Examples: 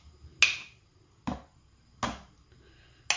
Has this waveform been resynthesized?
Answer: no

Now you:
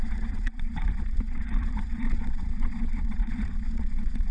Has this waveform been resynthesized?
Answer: yes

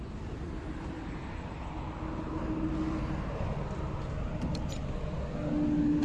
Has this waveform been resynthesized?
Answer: no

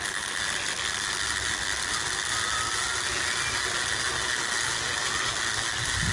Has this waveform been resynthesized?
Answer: no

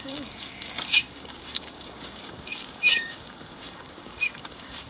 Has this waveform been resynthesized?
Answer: yes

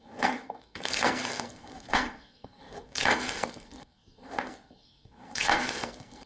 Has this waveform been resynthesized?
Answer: yes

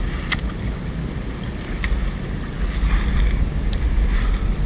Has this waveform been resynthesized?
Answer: no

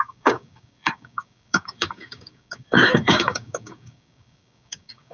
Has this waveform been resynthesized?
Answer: yes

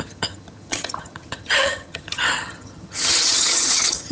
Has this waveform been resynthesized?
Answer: yes